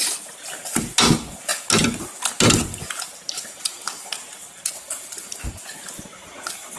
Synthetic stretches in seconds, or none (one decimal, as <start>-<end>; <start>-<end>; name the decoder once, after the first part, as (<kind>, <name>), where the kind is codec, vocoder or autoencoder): none